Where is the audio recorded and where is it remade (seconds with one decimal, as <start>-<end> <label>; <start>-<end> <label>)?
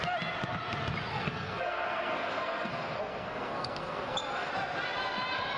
0.0-1.1 recorded; 1.1-4.5 remade; 4.5-5.6 recorded